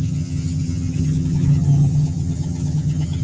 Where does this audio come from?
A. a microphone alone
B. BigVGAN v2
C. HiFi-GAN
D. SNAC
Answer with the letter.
C